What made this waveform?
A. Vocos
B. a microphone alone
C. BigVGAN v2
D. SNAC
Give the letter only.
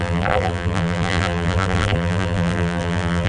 C